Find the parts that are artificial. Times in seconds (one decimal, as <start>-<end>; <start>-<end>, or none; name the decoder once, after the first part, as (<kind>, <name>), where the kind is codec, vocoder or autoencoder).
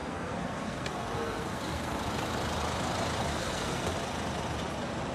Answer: 0.0-2.0 (codec, SNAC); 3.3-3.9